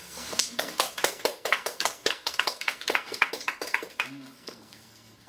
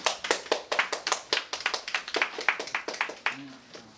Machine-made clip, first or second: first